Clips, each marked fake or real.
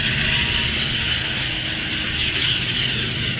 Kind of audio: real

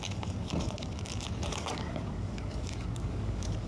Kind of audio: fake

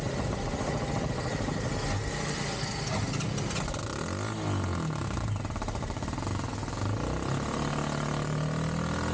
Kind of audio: real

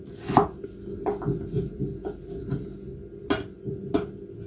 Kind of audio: real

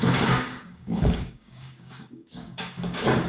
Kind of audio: fake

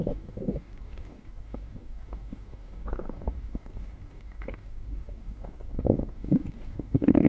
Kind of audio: fake